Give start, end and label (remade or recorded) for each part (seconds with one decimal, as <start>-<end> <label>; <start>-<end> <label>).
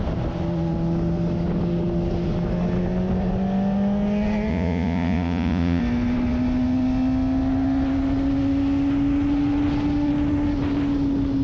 0.0-4.5 recorded; 4.5-5.8 remade; 5.8-11.4 recorded